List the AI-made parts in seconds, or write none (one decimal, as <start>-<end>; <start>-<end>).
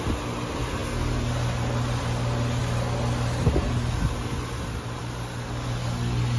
none